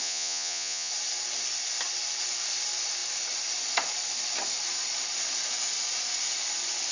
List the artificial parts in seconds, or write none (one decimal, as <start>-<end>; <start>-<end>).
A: 0.0-0.9